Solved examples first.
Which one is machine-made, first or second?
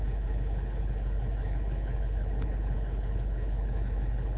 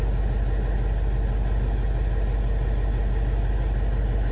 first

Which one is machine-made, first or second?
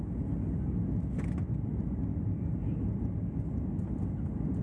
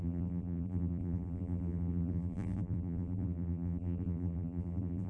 second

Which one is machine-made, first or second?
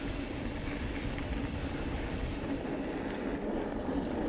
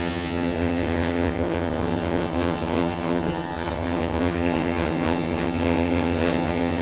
second